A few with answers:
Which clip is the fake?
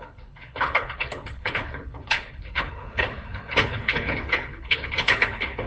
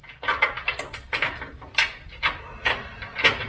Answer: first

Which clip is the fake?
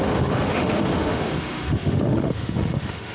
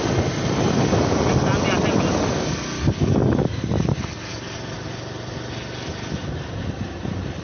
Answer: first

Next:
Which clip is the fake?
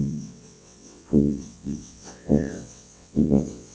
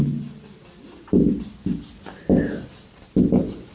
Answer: first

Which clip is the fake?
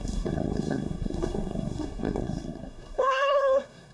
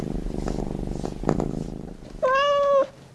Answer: first